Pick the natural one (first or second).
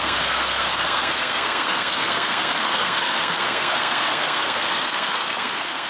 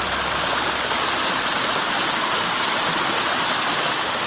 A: second